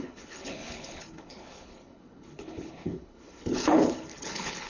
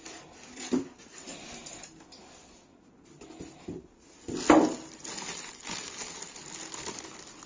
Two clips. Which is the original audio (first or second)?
second